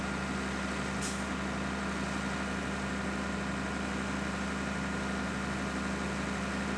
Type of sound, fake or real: real